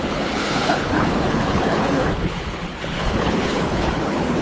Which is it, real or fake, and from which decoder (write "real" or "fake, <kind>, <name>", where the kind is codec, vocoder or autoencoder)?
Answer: fake, codec, HILCodec